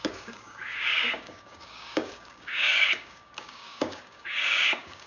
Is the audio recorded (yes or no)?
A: no